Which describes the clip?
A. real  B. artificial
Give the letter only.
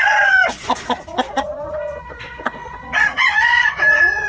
B